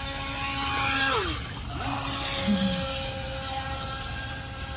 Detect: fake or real real